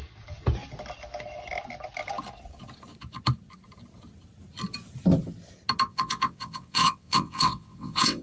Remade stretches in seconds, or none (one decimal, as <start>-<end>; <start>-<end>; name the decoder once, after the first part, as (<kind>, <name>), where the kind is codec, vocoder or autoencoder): 5.9-8.2 (vocoder, WaveNeXt)